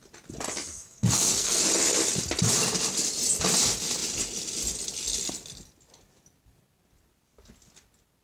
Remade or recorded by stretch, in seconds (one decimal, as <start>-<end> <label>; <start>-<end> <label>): 0.0-0.7 recorded; 0.7-1.6 remade; 1.6-8.2 recorded